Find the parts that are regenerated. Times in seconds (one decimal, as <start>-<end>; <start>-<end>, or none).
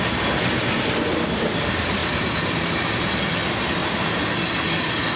2.0-3.2